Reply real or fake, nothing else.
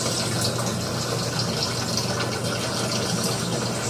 real